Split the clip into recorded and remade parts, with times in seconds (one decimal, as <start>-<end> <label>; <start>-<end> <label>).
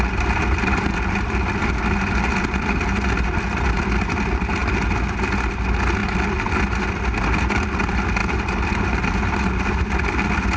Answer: 0.0-10.6 recorded